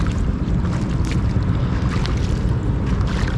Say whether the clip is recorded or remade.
recorded